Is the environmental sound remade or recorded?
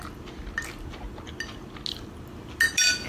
recorded